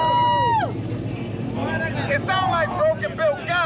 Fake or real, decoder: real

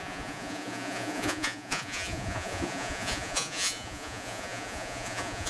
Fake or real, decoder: fake, vocoder, Vocos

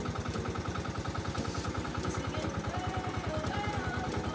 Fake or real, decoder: fake, vocoder, BigVGAN v2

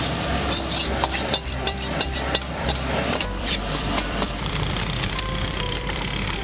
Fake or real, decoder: fake, vocoder, BigVGAN v2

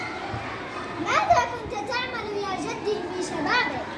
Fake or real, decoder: real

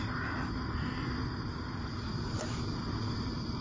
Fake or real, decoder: real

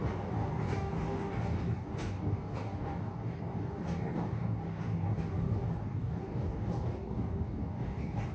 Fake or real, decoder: fake, codec, DAC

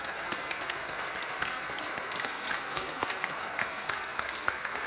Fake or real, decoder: fake, codec, SNAC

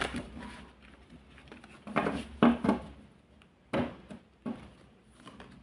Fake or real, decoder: real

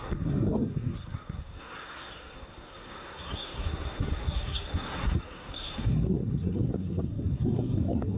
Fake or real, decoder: fake, codec, SNAC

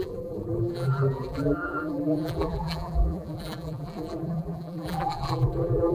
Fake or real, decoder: fake, vocoder, BigVGAN v2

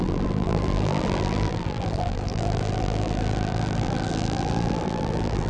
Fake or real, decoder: fake, vocoder, BigVGAN v2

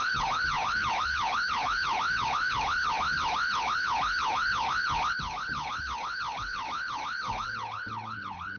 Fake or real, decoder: fake, codec, HILCodec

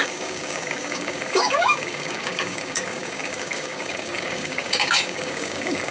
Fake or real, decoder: fake, codec, DAC